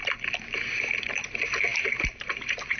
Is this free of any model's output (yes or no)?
no